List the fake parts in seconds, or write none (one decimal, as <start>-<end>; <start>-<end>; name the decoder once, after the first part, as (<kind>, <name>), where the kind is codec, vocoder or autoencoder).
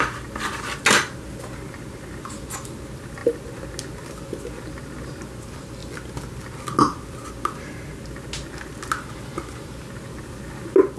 none